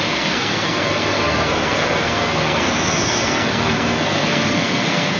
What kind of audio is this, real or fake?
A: fake